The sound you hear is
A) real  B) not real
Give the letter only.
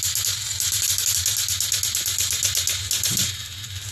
A